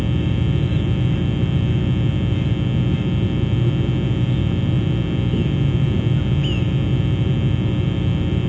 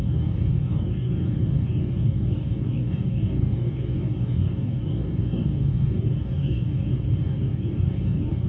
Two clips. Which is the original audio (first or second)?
first